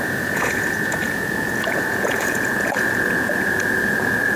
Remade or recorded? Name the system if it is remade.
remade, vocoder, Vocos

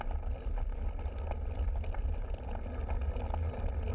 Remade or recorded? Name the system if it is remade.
recorded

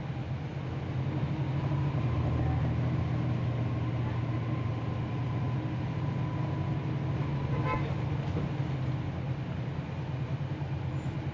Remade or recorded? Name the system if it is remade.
recorded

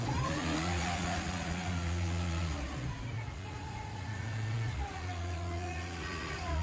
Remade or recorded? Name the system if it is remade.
remade, vocoder, Vocos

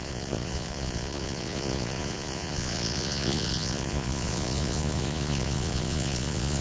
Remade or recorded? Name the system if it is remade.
remade, vocoder, Vocos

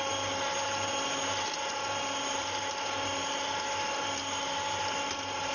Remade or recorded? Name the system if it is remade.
recorded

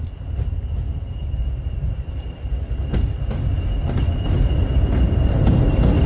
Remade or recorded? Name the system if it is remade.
recorded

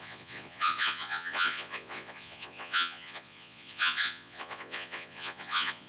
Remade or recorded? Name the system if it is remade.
remade, vocoder, Vocos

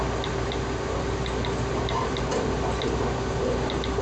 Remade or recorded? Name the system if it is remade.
recorded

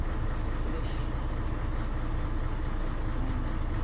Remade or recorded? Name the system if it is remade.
recorded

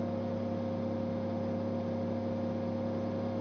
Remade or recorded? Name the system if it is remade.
recorded